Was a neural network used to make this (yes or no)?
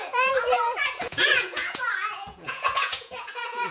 yes